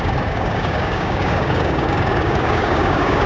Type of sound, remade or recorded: remade